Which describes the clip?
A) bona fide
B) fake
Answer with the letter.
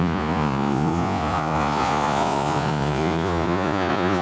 B